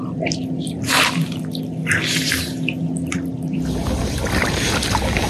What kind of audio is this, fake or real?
real